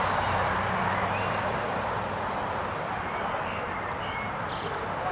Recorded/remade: recorded